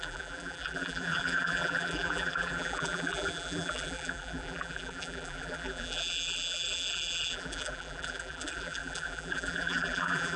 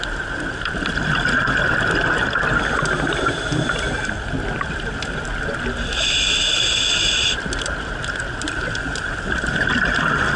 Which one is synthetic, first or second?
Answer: first